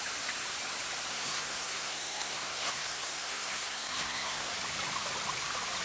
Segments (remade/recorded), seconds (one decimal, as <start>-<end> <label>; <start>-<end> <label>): 0.0-1.1 recorded; 1.1-4.5 remade; 4.5-5.8 recorded